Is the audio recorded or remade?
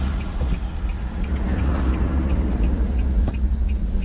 remade